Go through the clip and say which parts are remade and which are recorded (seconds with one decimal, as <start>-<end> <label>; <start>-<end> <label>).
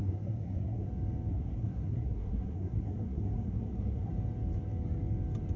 0.0-0.9 remade; 0.9-1.3 recorded; 1.3-4.1 remade; 4.1-5.6 recorded